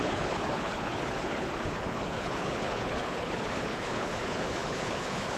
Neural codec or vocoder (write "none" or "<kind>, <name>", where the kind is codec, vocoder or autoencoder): codec, HILCodec